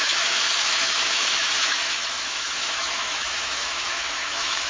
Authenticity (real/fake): fake